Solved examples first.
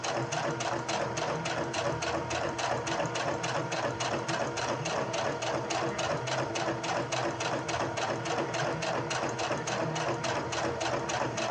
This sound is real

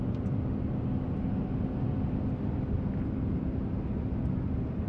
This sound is real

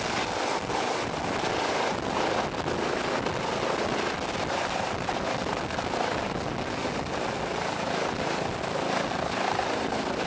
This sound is real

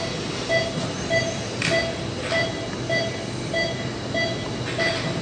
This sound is real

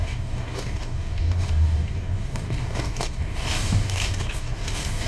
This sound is fake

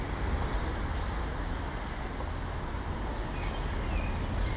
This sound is real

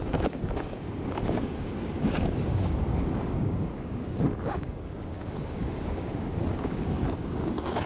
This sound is fake